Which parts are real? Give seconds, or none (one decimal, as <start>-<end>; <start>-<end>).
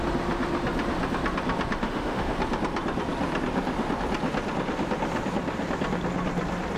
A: 0.0-1.8; 2.3-6.8